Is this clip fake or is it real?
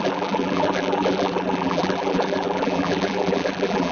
fake